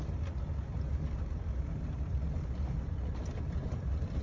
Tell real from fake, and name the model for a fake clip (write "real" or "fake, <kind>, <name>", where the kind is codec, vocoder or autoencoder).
real